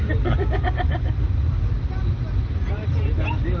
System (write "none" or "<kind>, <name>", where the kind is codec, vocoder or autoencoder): none